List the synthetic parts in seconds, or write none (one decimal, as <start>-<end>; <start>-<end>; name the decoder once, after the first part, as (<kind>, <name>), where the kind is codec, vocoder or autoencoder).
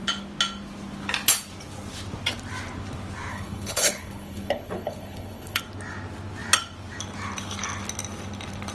3.3-5.6 (codec, HILCodec)